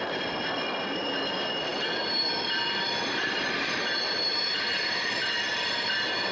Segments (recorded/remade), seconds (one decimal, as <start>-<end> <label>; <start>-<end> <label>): 0.0-6.3 remade